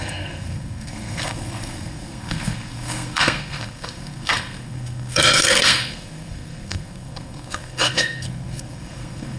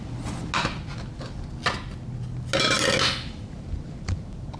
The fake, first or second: first